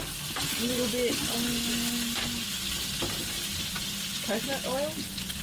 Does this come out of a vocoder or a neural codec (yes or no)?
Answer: no